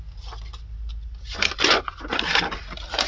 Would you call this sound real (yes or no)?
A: yes